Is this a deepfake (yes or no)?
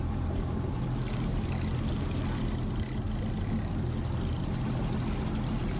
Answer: no